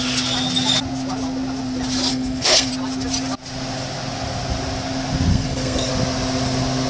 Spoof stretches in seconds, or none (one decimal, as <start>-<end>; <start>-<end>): 2.1-2.7; 5.3-5.9